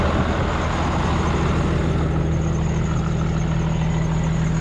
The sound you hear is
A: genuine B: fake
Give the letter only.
A